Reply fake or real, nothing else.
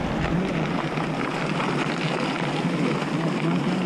real